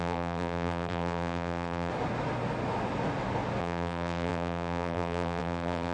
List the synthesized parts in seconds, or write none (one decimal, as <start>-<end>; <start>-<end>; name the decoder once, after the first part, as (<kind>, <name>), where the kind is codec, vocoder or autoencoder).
0.0-1.9 (vocoder, BigVGAN v2); 3.6-5.9